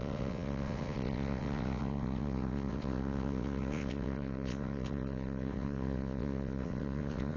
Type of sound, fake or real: fake